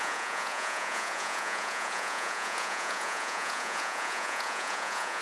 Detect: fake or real fake